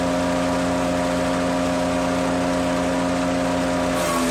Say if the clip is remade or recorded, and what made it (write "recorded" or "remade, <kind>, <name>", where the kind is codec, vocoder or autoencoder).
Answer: recorded